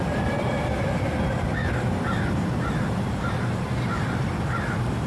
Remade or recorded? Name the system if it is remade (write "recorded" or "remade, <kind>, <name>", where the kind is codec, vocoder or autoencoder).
recorded